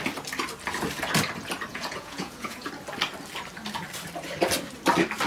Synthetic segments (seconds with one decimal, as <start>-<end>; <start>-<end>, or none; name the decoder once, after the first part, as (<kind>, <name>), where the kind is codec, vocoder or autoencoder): 1.7-2.7 (vocoder, Vocos)